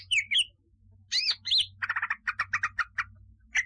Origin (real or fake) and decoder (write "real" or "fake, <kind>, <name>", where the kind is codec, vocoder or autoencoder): real